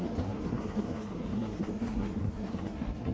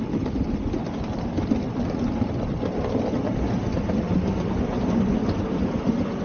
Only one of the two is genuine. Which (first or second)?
second